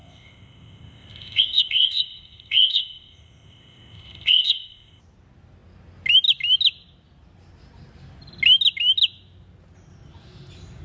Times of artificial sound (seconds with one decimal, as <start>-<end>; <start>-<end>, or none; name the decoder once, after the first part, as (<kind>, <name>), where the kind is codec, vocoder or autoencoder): 0.0-5.0 (codec, ZipCodec)